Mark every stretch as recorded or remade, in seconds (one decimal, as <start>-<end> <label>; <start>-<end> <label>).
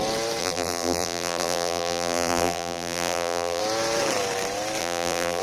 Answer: 0.0-0.4 recorded; 0.4-3.6 remade; 3.6-4.8 recorded; 4.8-5.4 remade